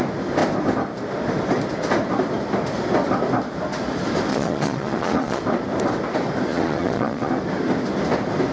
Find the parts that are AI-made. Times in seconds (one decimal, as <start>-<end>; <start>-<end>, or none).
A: 4.3-5.4; 6.5-7.3